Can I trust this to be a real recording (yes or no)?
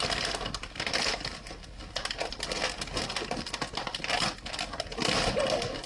yes